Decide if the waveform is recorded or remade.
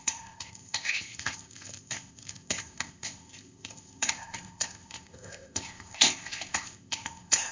remade